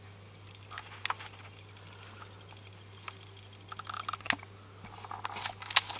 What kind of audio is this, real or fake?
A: real